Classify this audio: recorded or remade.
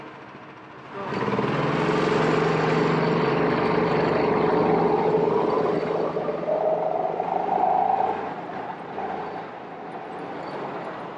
recorded